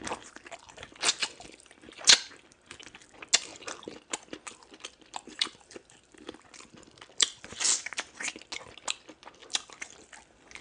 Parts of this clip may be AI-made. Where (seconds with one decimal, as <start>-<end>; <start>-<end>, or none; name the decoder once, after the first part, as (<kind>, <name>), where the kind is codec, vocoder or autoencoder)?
1.2-2.3 (vocoder, BigVGAN v2); 3.5-7.4; 9.4-10.1